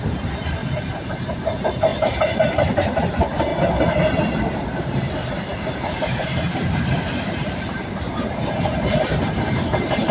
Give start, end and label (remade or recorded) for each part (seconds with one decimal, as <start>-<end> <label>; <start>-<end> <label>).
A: 0.0-3.5 remade; 3.5-4.2 recorded; 4.2-10.1 remade